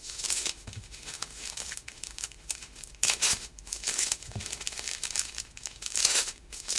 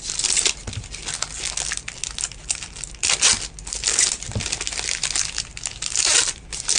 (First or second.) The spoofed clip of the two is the first